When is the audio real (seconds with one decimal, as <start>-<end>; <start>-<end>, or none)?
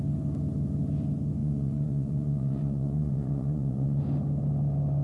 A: 0.0-1.4; 4.0-5.0